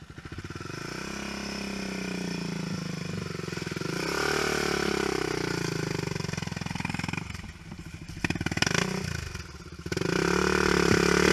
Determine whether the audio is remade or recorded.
recorded